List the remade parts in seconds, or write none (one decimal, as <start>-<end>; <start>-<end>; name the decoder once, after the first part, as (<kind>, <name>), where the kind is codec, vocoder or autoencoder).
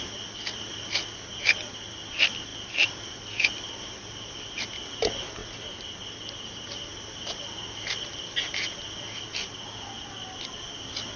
none